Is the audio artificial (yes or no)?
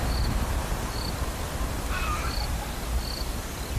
no